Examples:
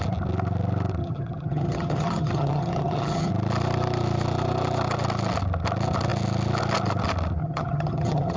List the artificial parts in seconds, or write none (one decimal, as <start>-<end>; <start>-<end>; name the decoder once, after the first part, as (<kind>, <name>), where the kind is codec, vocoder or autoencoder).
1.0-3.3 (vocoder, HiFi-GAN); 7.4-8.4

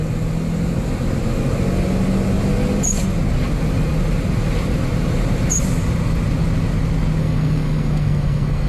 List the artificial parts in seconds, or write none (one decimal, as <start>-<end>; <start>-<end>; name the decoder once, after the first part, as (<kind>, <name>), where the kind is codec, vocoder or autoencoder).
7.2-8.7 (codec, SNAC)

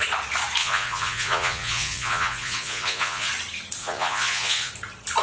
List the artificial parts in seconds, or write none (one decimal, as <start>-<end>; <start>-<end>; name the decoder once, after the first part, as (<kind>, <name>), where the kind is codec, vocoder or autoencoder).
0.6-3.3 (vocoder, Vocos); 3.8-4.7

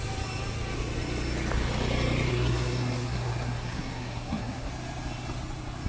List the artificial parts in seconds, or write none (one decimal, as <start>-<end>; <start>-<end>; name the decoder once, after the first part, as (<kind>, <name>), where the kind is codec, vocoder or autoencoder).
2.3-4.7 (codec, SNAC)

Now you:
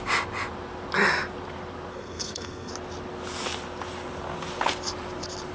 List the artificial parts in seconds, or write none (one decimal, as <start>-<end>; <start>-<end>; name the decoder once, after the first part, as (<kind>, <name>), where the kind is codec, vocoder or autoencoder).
1.9-2.7 (codec, SNAC)

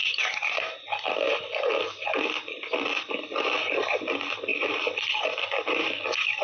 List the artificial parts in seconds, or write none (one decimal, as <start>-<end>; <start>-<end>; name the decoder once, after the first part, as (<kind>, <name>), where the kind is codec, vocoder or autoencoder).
none